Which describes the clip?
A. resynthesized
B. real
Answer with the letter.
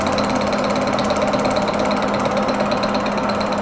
B